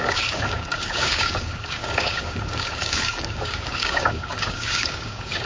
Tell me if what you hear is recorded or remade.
remade